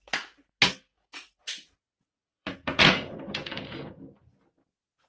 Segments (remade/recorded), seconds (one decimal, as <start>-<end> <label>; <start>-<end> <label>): 0.0-0.9 recorded; 0.9-4.0 remade; 4.0-5.1 recorded